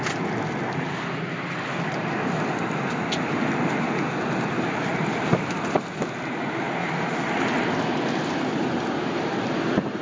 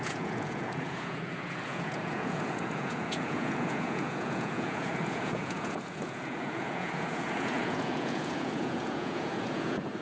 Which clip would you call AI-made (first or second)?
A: second